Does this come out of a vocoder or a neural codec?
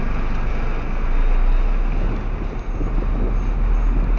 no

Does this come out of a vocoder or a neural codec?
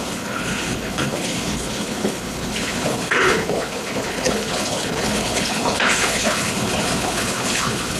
yes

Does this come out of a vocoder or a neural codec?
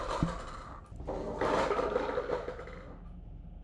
no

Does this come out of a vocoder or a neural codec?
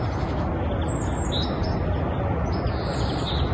no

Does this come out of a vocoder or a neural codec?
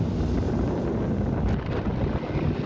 no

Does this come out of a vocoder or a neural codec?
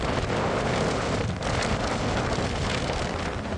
no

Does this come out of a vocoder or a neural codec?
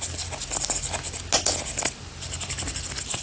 no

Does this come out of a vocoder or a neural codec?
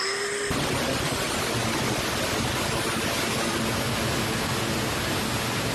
no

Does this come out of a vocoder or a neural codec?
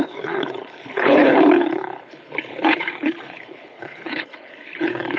yes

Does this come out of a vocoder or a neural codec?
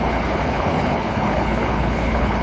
yes